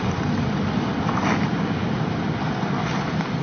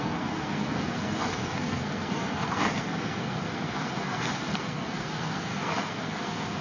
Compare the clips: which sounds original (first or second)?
first